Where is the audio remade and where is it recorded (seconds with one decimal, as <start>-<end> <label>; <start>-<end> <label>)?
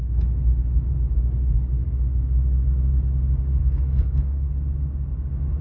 0.0-3.6 recorded; 3.6-4.5 remade; 4.5-5.6 recorded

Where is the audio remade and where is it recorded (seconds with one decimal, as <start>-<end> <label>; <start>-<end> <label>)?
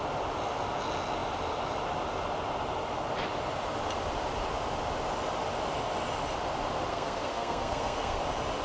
0.0-6.9 recorded; 6.9-8.2 remade; 8.2-8.6 recorded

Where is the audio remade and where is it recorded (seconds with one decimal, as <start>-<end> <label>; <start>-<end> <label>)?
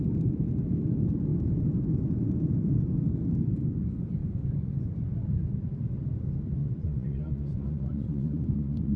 0.0-6.6 recorded; 6.6-9.0 remade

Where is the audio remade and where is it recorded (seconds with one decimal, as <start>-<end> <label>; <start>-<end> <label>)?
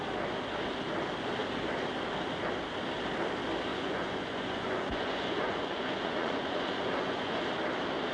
0.0-3.7 recorded; 3.7-7.4 remade; 7.4-8.1 recorded